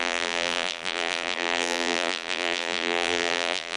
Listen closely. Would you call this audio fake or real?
fake